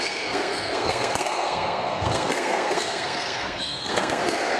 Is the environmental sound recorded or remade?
remade